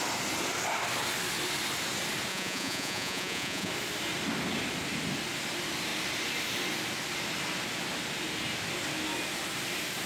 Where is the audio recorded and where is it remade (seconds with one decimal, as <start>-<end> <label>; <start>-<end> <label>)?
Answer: 0.0-2.3 recorded; 2.3-3.7 remade; 3.7-10.1 recorded